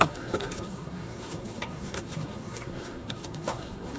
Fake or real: fake